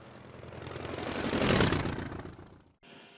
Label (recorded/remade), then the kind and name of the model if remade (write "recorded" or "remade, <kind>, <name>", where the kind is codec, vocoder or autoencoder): recorded